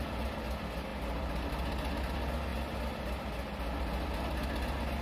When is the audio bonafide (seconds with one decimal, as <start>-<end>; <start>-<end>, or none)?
0.0-5.0